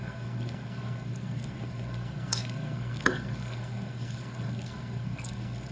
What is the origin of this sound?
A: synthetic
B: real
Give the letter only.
A